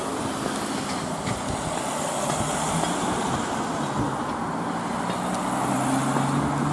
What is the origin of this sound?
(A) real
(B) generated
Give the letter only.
A